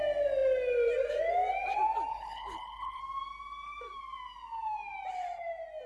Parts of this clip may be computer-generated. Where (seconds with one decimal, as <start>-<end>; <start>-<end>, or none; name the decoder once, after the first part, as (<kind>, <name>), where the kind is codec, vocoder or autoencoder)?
2.1-3.0 (codec, HILCodec)